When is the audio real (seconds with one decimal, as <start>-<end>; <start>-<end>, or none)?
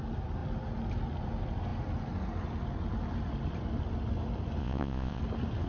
0.0-4.6; 5.2-5.7